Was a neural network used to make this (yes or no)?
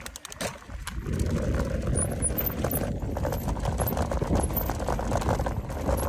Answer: no